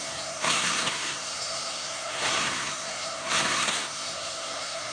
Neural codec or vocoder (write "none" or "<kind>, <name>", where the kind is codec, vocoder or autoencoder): codec, SNAC